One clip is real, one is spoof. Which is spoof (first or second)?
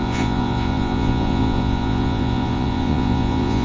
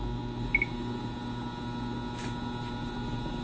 first